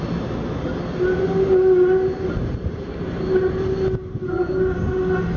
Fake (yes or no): no